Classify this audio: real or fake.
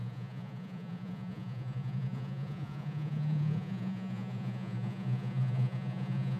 fake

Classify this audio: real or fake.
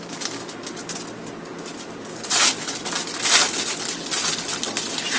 real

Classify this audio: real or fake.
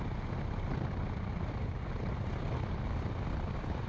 real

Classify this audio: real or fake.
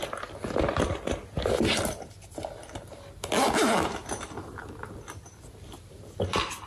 real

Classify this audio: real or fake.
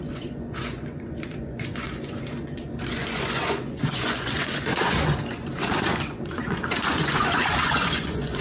fake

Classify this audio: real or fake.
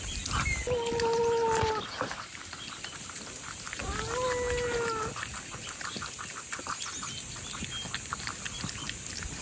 real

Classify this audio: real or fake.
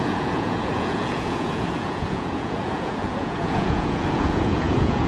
fake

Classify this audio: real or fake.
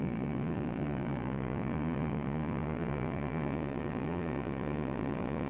fake